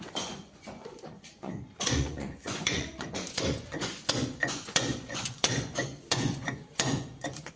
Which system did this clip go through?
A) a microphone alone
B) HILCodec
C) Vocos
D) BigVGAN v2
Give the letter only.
C